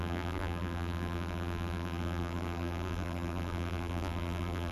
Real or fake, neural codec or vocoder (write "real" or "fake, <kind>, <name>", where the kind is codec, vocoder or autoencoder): fake, vocoder, BigVGAN v2